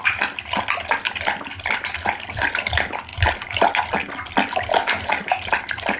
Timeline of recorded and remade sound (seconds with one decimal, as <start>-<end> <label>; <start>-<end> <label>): 0.0-6.0 recorded